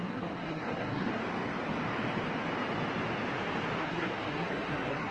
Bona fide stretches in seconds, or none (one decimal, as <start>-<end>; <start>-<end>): 1.2-3.8